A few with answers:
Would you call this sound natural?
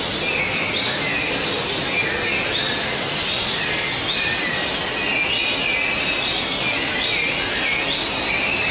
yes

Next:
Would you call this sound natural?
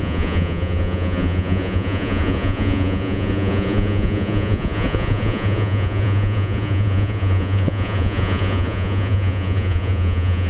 no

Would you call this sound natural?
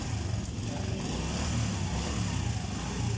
yes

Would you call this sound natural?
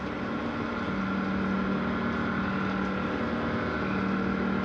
yes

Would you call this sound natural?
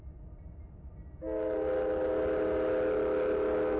yes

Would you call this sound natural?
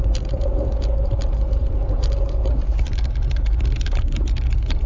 no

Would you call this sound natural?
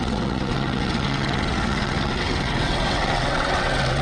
no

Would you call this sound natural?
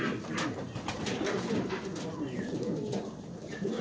yes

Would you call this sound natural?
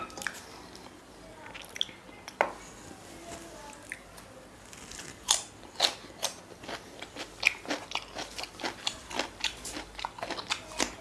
yes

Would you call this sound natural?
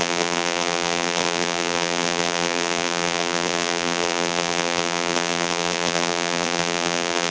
no